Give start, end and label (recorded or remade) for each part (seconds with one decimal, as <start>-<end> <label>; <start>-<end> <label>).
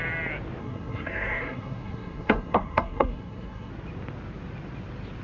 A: 0.0-0.6 recorded; 0.6-3.7 remade; 3.7-5.2 recorded